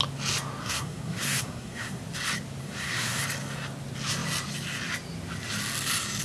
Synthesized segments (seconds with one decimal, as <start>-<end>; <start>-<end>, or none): 0.6-2.0; 2.6-3.2